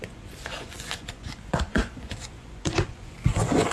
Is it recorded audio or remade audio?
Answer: remade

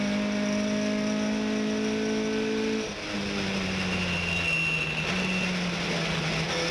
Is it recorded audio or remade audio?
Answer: recorded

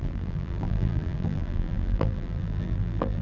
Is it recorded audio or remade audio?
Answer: remade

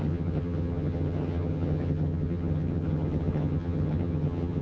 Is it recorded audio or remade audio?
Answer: remade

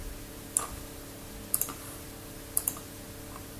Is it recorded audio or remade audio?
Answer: recorded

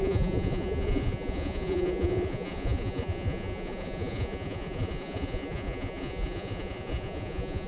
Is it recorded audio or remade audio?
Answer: remade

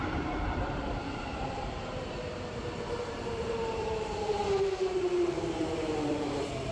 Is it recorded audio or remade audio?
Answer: remade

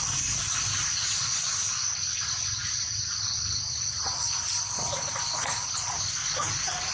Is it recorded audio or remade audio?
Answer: recorded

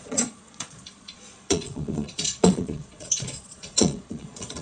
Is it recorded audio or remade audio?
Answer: remade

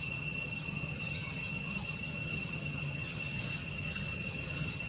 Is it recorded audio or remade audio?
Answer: remade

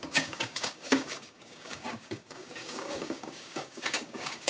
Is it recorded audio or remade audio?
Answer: remade